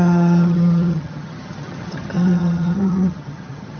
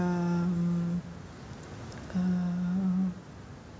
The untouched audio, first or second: second